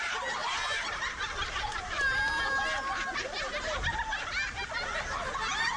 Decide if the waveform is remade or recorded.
recorded